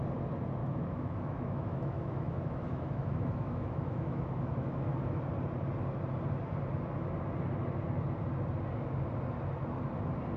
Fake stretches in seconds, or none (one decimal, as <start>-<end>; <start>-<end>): 0.6-5.2